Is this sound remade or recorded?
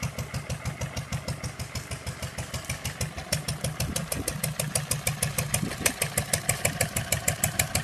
recorded